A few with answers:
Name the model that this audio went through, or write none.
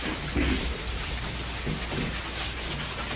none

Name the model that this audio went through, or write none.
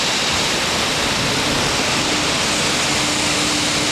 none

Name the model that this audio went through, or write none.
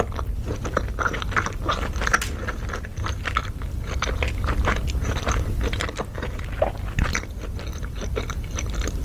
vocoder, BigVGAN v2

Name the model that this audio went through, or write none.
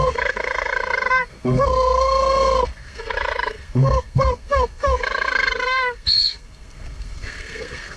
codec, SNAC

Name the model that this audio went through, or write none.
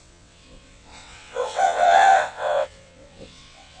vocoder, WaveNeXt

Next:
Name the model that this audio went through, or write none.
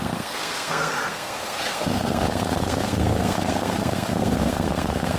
codec, SNAC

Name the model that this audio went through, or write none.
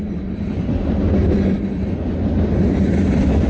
none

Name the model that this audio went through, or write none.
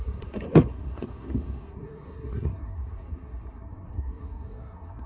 codec, SNAC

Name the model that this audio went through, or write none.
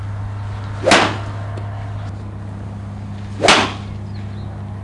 none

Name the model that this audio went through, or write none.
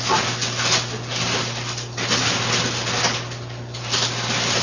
none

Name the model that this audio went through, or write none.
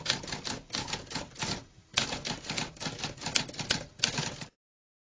none